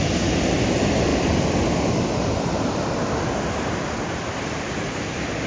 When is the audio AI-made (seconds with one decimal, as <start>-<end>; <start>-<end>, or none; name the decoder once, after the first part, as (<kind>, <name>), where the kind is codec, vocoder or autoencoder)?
none